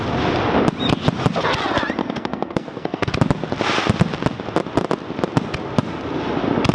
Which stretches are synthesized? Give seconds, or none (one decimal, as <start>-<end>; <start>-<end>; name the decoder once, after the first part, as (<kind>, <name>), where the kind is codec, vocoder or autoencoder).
2.0-3.1 (codec, SNAC)